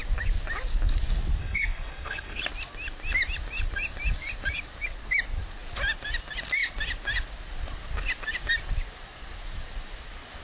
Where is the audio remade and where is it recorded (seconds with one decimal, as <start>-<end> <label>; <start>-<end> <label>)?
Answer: 0.0-1.4 recorded; 1.4-2.4 remade; 2.4-10.4 recorded